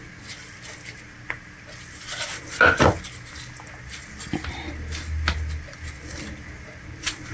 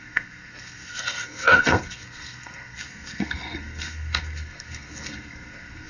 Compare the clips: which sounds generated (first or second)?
second